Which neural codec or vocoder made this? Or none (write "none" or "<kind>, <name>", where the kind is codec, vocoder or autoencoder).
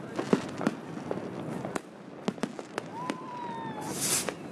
none